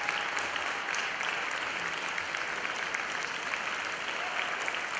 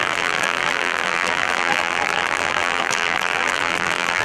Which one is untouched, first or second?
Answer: first